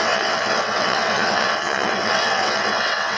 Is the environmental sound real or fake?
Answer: fake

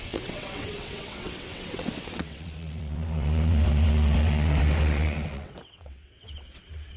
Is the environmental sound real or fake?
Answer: fake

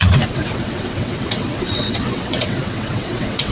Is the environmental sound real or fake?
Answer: fake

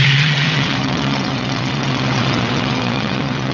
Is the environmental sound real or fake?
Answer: fake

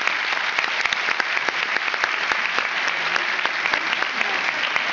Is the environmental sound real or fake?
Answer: real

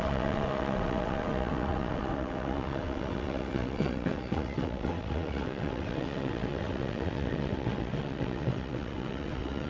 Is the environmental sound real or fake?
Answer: fake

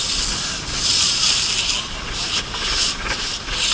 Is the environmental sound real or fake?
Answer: real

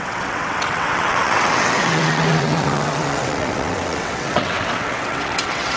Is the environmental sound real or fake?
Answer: fake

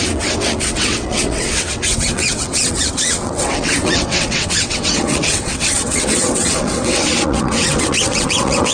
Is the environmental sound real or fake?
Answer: fake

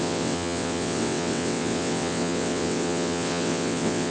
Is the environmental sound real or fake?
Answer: fake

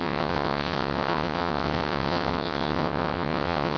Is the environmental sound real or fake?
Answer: fake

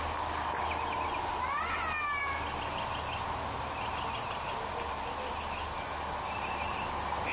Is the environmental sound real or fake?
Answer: real